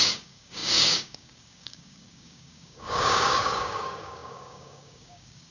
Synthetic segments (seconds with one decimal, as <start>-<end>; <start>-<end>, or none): 0.0-5.5

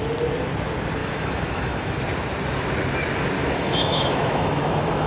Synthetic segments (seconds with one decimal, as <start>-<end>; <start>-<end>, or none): 1.0-2.0; 3.4-5.1

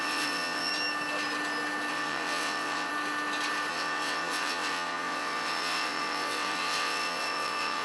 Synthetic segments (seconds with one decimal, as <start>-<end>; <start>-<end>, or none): 0.0-0.7; 1.9-2.9; 3.7-7.8

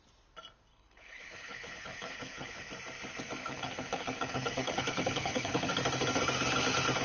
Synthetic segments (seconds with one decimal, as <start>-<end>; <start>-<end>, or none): 0.7-2.7; 3.4-5.7

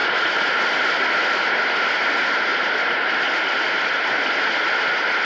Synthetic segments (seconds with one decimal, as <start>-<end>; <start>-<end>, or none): none

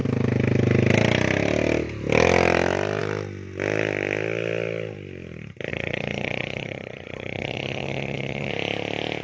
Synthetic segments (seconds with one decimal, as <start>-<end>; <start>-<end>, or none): 5.7-8.5

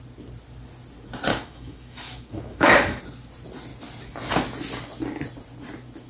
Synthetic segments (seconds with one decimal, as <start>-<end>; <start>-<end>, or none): 1.3-3.0

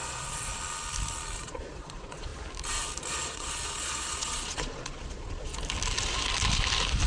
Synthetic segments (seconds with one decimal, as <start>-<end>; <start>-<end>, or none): 0.0-0.5; 1.4-2.3; 3.1-5.5